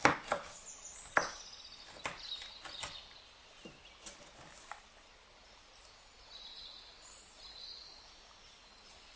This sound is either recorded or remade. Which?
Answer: recorded